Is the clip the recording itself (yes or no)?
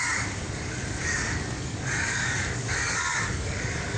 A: no